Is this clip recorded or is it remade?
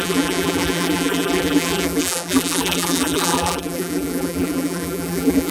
remade